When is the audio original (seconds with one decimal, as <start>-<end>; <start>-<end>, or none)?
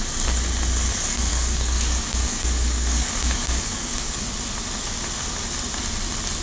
0.0-1.3; 4.3-6.4